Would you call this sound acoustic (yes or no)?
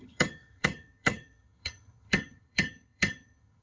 no